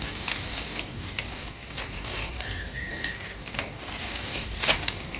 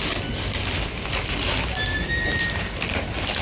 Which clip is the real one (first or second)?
second